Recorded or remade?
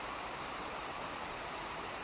remade